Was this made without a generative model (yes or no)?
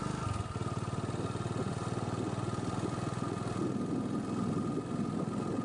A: yes